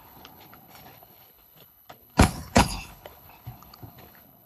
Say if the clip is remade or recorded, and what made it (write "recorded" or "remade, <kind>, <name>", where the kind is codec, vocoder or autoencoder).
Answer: remade, codec, HILCodec